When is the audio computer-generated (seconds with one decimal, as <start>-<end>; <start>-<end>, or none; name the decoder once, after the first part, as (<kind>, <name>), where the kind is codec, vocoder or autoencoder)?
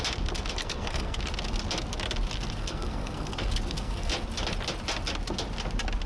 0.6-1.2 (codec, SNAC); 2.6-4.1